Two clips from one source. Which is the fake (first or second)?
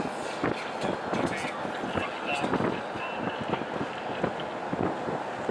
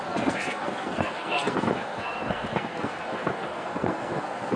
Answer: second